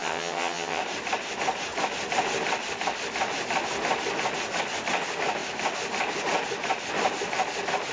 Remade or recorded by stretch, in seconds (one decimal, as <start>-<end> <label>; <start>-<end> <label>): 0.0-0.8 remade; 0.8-7.9 recorded